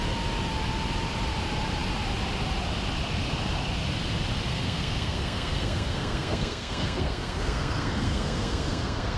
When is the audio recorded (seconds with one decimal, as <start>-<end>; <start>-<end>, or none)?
0.0-4.5